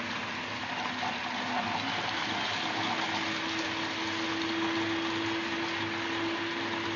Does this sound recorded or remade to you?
recorded